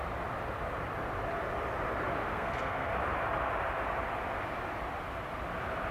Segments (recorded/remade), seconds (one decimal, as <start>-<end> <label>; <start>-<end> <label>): 0.0-2.3 recorded; 2.3-3.0 remade; 3.0-5.9 recorded